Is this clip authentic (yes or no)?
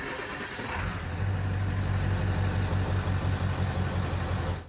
yes